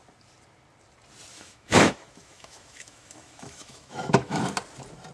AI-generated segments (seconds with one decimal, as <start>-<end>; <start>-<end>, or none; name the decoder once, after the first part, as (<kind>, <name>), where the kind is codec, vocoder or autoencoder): 1.3-4.4 (autoencoder, DAC-VAE)